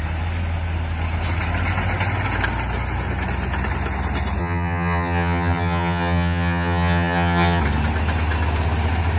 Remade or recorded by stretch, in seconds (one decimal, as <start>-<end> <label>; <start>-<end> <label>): 0.0-4.4 recorded; 4.4-7.6 remade; 7.6-9.2 recorded